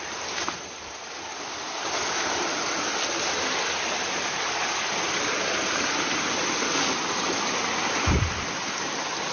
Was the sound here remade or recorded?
recorded